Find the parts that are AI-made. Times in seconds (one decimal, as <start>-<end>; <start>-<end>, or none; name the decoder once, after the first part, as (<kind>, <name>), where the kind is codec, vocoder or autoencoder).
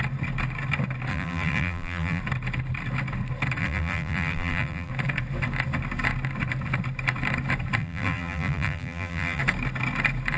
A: 1.1-2.2 (vocoder, BigVGAN v2); 3.6-4.9; 7.8-9.4